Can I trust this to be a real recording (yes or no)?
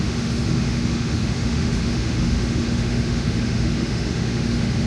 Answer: no